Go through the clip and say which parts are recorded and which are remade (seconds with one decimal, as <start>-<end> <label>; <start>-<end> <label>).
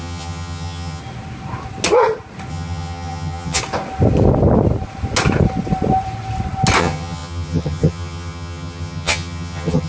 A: 0.0-1.0 remade; 1.0-2.5 recorded; 2.5-3.6 remade; 3.6-6.8 recorded; 6.8-9.9 remade